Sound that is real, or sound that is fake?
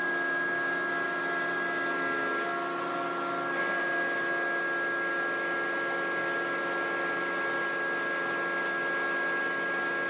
real